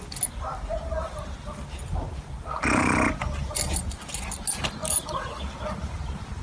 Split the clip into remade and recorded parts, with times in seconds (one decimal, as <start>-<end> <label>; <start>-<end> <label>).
0.0-6.4 recorded